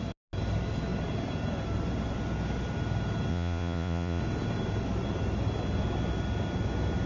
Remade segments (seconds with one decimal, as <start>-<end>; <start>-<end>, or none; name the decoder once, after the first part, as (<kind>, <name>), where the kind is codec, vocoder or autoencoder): 3.3-4.2 (vocoder, Vocos)